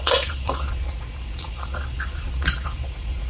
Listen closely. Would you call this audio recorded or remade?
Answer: remade